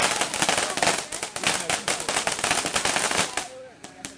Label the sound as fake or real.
real